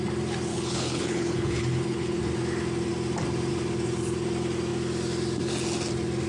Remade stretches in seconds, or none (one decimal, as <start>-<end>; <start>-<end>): 0.5-2.2